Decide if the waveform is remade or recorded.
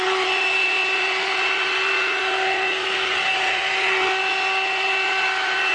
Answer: recorded